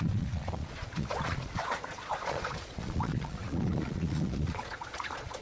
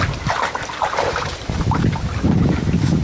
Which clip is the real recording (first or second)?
second